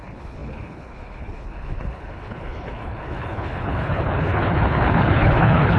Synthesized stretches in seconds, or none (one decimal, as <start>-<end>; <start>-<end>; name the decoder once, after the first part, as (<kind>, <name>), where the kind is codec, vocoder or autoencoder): 0.0-5.8 (codec, HILCodec)